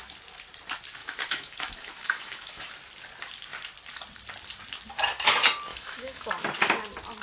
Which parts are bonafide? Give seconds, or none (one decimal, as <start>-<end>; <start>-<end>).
0.0-1.0; 2.7-5.7; 6.3-7.2

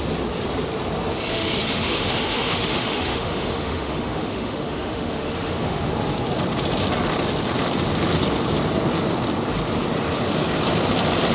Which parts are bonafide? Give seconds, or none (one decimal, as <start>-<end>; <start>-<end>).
0.0-1.3; 5.9-11.3

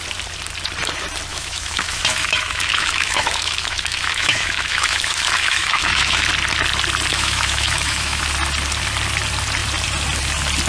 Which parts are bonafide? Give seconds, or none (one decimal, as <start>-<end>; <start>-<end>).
0.0-1.3; 6.3-7.1; 8.2-10.7

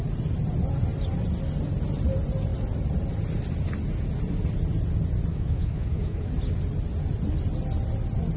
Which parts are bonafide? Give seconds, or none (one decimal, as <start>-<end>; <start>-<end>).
0.0-5.3; 6.3-8.4